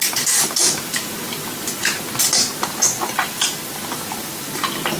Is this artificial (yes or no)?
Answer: no